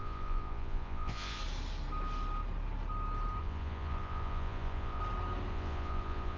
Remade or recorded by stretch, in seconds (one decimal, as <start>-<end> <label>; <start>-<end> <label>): 0.0-1.4 remade; 1.4-3.4 recorded; 3.4-5.0 remade; 5.0-5.5 recorded; 5.5-6.4 remade